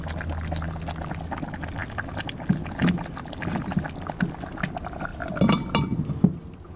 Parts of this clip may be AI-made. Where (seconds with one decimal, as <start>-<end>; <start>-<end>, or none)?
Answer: none

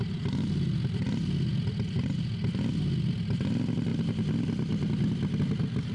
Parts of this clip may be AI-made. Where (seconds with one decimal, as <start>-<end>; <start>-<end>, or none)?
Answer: none

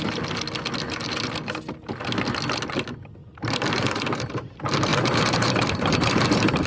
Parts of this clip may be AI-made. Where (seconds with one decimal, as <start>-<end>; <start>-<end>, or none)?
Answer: 3.2-4.3; 4.9-6.7